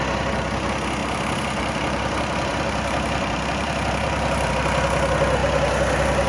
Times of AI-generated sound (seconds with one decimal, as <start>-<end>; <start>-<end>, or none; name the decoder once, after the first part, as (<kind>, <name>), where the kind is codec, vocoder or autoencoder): 1.0-4.5 (vocoder, BigVGAN v2)